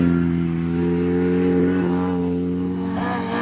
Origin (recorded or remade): recorded